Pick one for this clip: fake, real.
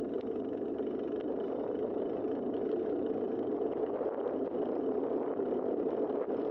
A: fake